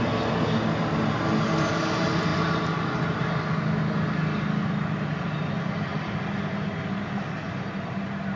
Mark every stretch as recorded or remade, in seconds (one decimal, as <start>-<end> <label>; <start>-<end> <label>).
0.0-8.4 recorded